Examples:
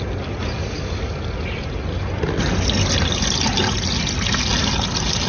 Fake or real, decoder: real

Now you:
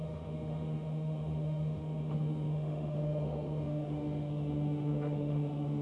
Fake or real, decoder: fake, autoencoder, DAC-VAE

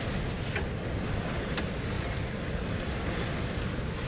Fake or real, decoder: real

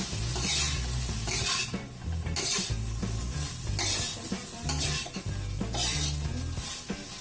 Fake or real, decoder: real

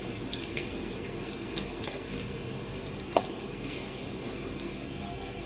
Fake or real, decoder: fake, codec, SNAC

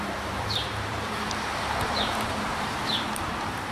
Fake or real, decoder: fake, vocoder, BigVGAN v2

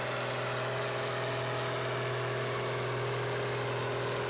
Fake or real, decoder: real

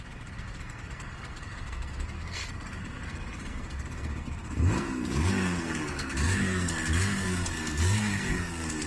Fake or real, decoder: fake, codec, SNAC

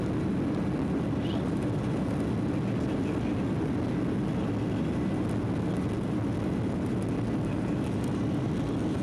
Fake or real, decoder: real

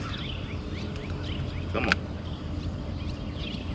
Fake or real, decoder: real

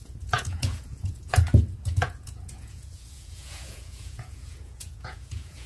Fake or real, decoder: fake, vocoder, Vocos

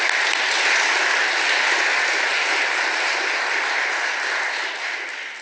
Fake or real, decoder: real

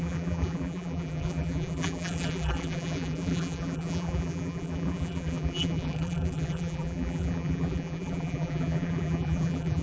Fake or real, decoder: fake, vocoder, BigVGAN v2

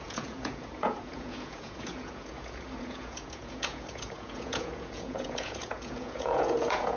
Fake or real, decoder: fake, vocoder, Vocos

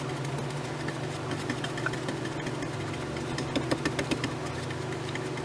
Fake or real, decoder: real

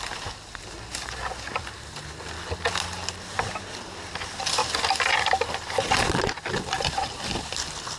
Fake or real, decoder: real